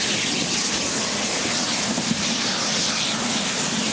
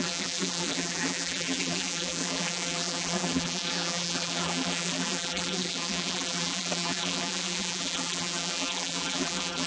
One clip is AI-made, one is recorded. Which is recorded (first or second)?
first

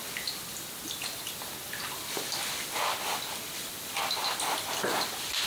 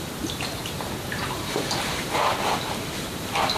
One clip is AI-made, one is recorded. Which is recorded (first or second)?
first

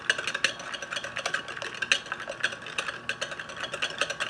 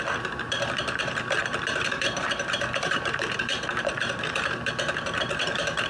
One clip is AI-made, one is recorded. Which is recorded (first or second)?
first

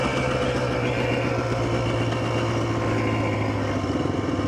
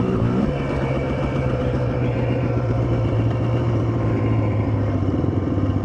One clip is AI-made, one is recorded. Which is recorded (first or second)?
first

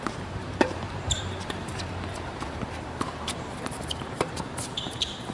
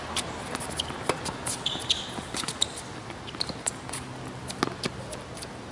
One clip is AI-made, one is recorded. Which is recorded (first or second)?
second